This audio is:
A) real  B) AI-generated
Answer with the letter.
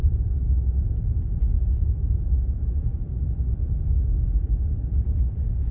A